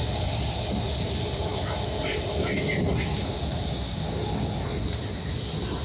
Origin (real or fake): real